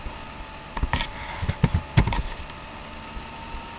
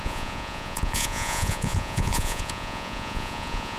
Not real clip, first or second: second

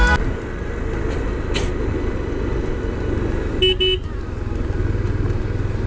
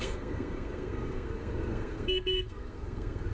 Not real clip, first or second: second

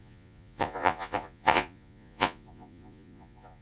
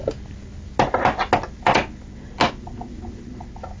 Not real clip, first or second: first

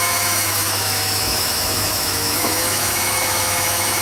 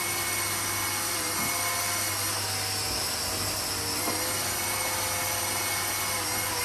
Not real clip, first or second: first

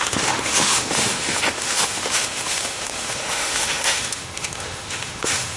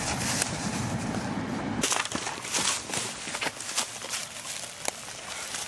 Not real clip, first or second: first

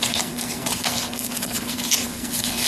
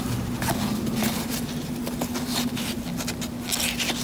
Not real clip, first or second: first